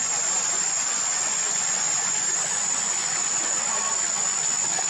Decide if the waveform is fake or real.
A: fake